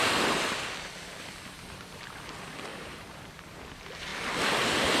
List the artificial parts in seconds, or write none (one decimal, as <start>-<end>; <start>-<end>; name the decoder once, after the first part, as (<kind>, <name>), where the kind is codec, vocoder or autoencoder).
2.7-3.3 (vocoder, BigVGAN v2)